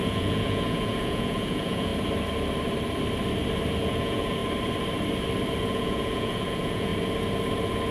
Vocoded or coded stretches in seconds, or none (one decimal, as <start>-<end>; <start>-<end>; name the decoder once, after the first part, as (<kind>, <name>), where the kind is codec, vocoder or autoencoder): 0.0-1.9 (vocoder, Vocos); 3.8-4.4; 5.6-6.9